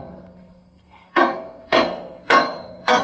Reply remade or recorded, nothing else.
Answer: remade